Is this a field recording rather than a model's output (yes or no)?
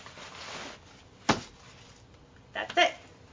yes